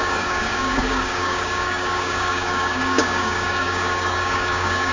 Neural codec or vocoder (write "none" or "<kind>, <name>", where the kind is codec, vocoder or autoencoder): codec, DAC